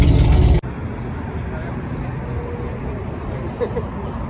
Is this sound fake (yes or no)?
no